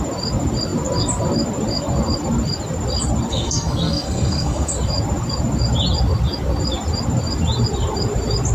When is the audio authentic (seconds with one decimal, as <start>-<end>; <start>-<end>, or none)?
0.0-3.3; 4.7-8.5